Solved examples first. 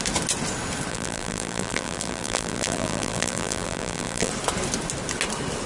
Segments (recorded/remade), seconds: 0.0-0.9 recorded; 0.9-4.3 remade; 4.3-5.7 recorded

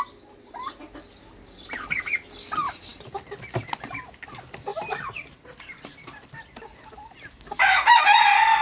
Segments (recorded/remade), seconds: 0.0-4.7 recorded; 4.7-7.5 remade; 7.5-8.6 recorded

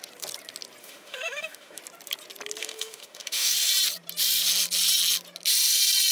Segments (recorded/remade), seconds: 0.0-0.8 recorded; 0.8-1.8 remade; 1.8-2.6 recorded; 2.6-3.5 remade; 3.5-6.1 recorded

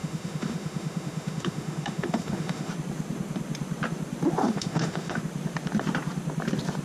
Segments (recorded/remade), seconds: 0.0-2.7 remade; 2.7-4.4 recorded; 4.4-5.2 remade; 5.2-6.8 recorded